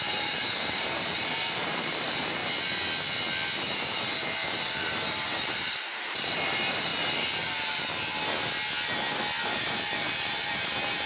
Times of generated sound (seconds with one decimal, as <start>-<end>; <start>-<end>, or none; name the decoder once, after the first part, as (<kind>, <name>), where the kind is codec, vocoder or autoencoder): 0.0-2.4 (vocoder, BigVGAN v2); 3.6-6.9; 9.5-11.1